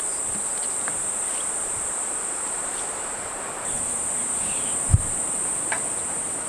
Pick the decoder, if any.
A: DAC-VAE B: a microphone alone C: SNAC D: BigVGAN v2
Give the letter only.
B